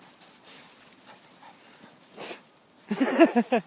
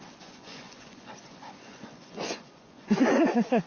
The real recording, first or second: first